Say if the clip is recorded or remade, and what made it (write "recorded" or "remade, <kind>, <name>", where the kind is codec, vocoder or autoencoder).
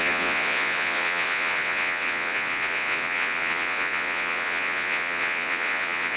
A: remade, vocoder, Vocos